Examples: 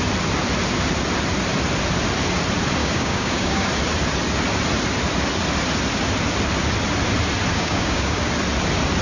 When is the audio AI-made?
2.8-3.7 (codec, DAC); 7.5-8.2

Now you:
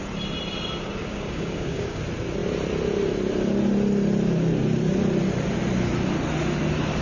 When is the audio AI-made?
1.0-2.0 (codec, DAC)

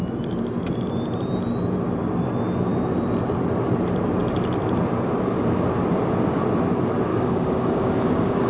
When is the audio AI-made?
7.1-8.5 (codec, DAC)

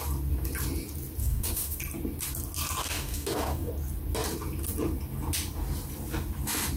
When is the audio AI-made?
1.2-1.8 (codec, DAC); 2.8-3.7

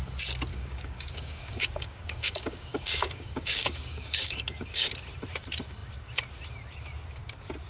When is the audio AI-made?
0.5-4.9 (codec, DAC)

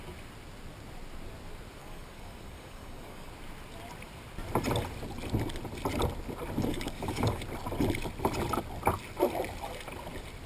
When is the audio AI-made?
1.8-3.3 (codec, DAC); 6.7-7.4